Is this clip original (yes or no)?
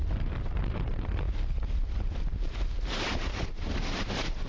no